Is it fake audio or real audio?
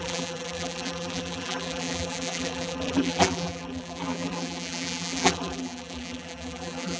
fake